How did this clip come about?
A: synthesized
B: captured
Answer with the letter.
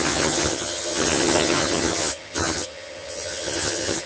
A